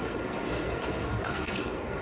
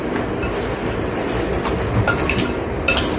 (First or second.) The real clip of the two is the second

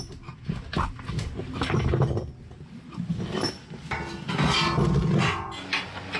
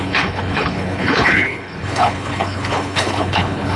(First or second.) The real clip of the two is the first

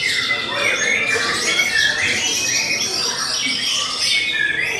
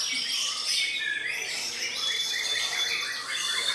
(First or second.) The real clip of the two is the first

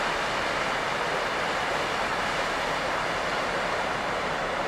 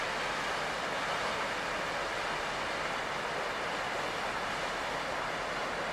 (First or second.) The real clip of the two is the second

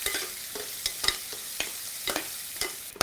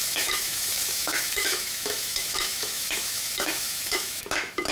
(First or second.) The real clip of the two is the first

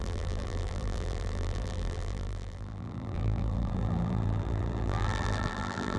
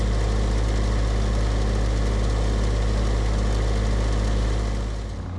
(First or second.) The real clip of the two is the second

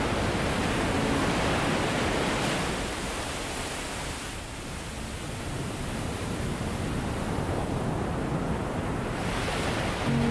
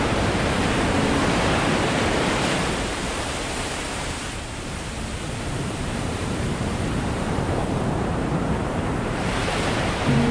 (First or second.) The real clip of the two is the first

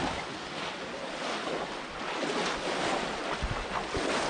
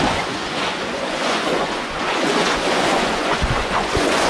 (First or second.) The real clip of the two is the first